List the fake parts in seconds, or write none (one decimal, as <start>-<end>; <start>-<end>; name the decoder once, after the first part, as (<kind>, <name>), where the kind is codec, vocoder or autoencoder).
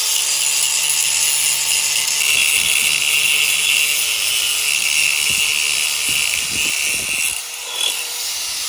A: none